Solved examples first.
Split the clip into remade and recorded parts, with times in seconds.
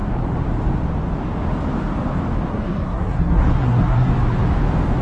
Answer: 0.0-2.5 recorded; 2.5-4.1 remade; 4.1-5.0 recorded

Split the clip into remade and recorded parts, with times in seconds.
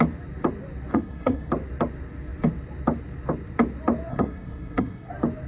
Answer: 0.0-0.9 recorded; 0.9-1.5 remade; 1.5-4.1 recorded; 4.1-5.1 remade; 5.1-5.5 recorded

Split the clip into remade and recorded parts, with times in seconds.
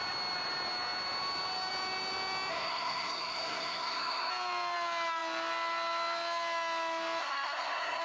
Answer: 0.0-2.5 recorded; 2.5-4.3 remade; 4.3-7.2 recorded; 7.2-8.0 remade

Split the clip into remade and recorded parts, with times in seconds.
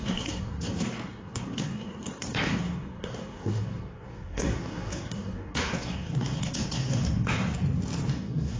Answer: 0.0-7.6 remade; 7.6-8.1 recorded; 8.1-8.6 remade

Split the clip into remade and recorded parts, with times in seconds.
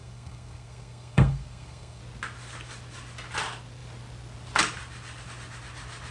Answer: 0.0-2.0 remade; 2.0-6.1 recorded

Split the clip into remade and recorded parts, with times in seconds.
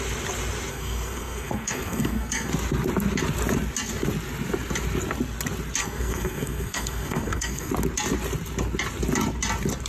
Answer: 0.0-0.7 recorded; 0.7-2.5 remade; 2.5-5.8 recorded; 5.8-7.7 remade; 7.7-9.9 recorded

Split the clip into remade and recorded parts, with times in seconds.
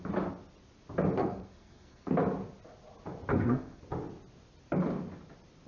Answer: 0.0-1.2 recorded; 1.2-2.1 remade; 2.1-3.3 recorded; 3.3-3.8 remade; 3.8-5.7 recorded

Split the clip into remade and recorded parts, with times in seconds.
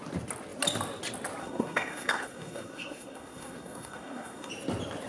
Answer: 0.0-1.4 recorded; 1.4-4.5 remade; 4.5-5.1 recorded